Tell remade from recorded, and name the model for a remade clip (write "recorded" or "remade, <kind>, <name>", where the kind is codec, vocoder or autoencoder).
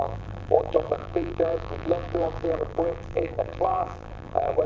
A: remade, vocoder, BigVGAN v2